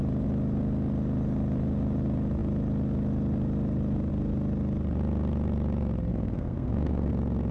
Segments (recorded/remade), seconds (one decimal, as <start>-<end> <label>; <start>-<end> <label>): 0.0-6.1 recorded; 6.1-7.1 remade; 7.1-7.5 recorded

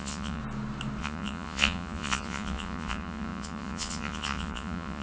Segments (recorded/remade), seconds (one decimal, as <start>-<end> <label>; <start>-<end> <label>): 0.0-0.4 remade; 0.4-1.0 recorded; 1.0-5.0 remade

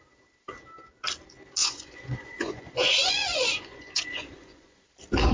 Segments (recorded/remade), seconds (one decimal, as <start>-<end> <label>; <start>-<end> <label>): 0.0-1.6 recorded; 1.6-4.8 remade; 4.8-5.3 recorded

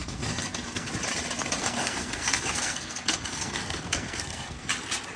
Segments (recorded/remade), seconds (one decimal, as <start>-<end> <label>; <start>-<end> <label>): 0.0-0.9 remade; 0.9-1.6 recorded; 1.6-4.7 remade; 4.7-5.2 recorded

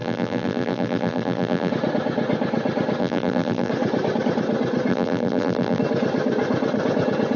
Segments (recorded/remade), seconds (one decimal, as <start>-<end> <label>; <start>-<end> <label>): 0.0-1.7 remade; 1.7-3.0 recorded; 3.0-3.7 remade; 3.7-4.9 recorded; 4.9-5.8 remade; 5.8-7.4 recorded

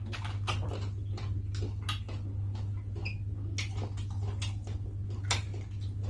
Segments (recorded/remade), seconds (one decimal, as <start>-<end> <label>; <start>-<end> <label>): 0.0-6.1 recorded

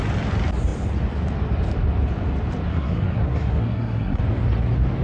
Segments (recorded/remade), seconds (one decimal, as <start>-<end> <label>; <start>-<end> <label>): 0.0-2.7 recorded; 2.7-4.2 remade; 4.2-5.0 recorded

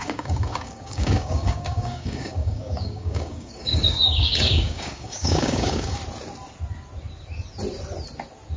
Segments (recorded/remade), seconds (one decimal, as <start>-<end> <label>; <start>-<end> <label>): 0.0-6.0 remade; 6.0-8.6 recorded